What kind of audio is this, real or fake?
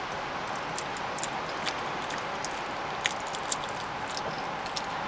real